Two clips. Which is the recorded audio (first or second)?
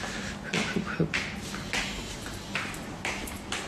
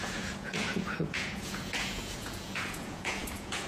first